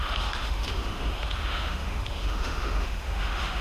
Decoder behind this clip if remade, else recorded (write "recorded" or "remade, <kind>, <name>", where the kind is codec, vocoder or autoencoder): remade, autoencoder, DAC-VAE